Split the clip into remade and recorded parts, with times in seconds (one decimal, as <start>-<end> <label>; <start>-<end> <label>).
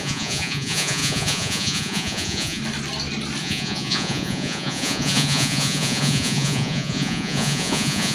0.0-2.6 remade; 2.6-3.4 recorded; 3.4-8.1 remade